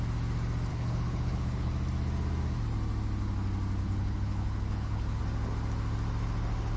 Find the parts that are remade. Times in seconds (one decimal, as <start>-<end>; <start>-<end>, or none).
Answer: 0.7-1.7; 3.8-5.2